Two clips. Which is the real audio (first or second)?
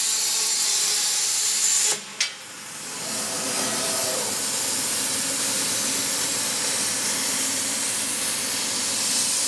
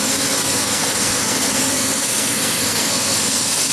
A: first